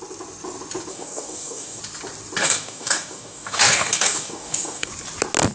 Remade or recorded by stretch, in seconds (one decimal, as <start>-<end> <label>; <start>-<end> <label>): 0.0-0.9 recorded; 0.9-1.8 remade; 1.8-2.4 recorded; 2.4-4.9 remade; 4.9-5.5 recorded